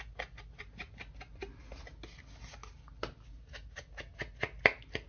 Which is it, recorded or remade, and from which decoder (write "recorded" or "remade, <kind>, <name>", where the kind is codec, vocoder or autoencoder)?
recorded